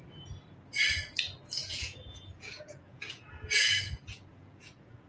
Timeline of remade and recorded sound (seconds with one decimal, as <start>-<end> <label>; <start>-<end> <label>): 0.0-1.6 recorded; 1.6-5.1 remade